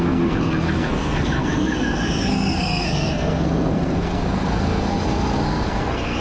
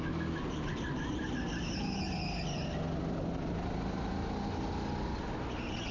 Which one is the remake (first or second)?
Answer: first